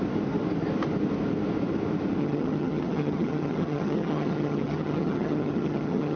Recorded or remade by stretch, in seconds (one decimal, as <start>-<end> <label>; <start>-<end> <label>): 0.0-2.2 recorded; 2.2-6.2 remade